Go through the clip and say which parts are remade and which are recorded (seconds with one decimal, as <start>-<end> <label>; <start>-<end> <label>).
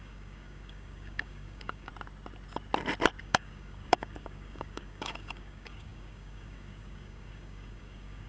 0.0-1.9 remade; 1.9-3.2 recorded; 3.2-8.3 remade